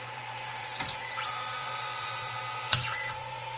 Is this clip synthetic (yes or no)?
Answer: yes